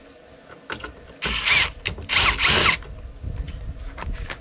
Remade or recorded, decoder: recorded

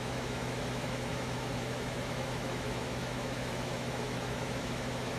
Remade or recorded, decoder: remade, autoencoder, DAC-VAE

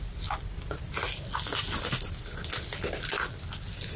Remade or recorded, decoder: recorded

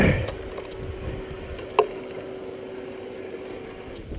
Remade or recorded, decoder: recorded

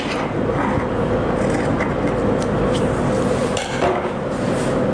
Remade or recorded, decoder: recorded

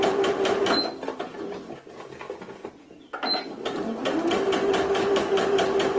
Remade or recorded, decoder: recorded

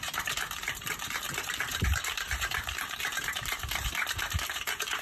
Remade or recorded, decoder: remade, vocoder, BigVGAN v2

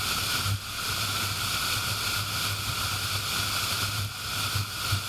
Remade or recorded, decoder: recorded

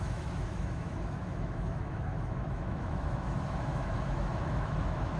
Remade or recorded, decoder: remade, autoencoder, DAC-VAE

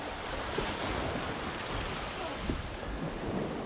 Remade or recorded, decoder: recorded